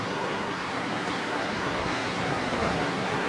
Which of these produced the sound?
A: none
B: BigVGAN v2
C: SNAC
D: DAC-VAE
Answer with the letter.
C